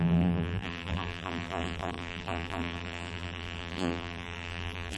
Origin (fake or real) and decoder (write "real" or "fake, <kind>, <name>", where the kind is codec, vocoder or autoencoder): fake, vocoder, BigVGAN v2